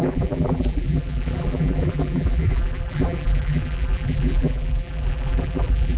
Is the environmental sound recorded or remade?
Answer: remade